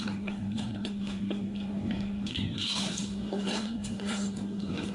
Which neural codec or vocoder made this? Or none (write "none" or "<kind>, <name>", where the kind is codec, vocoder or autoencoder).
codec, SNAC